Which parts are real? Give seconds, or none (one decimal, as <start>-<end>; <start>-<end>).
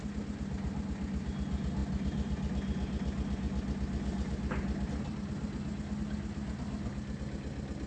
0.0-7.9